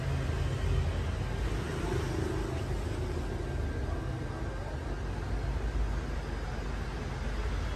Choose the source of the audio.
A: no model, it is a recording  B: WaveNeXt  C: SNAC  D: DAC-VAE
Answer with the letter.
A